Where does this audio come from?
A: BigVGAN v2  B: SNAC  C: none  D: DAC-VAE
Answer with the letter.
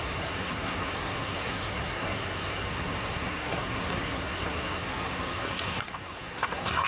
B